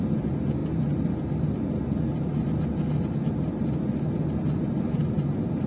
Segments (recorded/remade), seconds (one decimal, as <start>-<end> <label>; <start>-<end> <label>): 0.0-5.7 recorded